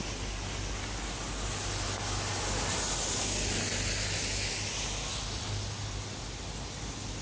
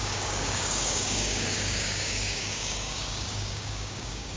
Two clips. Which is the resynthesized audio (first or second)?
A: second